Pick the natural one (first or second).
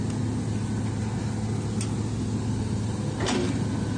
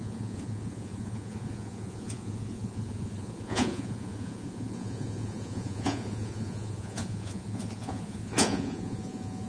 first